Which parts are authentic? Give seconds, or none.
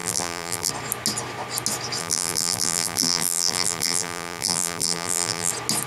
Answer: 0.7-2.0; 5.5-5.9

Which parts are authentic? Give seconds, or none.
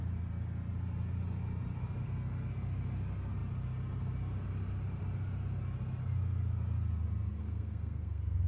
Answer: 0.0-7.4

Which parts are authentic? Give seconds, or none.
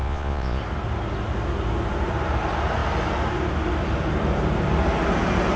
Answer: 0.6-5.6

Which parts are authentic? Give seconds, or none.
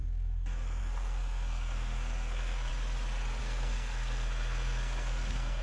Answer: 2.7-3.4